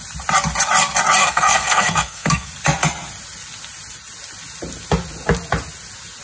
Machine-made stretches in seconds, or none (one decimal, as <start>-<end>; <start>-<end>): 1.2-2.5